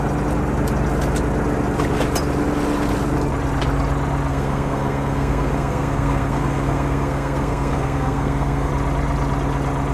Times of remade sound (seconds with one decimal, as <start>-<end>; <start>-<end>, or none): 4.3-8.7